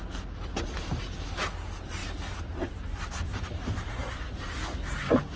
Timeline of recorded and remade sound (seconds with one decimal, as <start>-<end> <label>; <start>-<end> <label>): 0.0-2.0 recorded; 2.0-5.4 remade